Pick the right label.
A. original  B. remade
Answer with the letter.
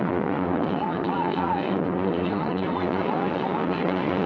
B